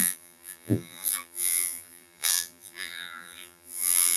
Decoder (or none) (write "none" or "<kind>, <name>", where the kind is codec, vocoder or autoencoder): vocoder, BigVGAN v2